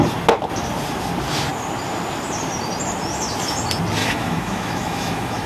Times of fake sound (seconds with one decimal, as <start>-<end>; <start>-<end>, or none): 4.0-5.5